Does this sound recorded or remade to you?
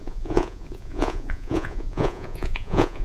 remade